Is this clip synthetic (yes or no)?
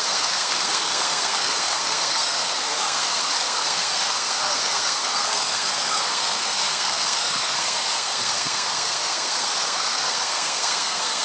yes